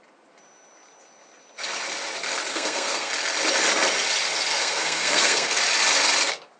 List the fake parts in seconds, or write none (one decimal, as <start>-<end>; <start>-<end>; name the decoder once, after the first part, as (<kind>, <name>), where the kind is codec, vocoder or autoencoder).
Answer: 2.5-3.1 (codec, SNAC); 4.5-5.6